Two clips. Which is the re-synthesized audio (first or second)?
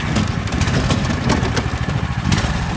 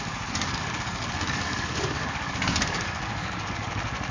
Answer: second